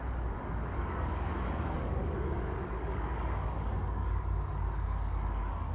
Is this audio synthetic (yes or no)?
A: yes